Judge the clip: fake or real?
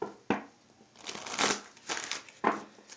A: real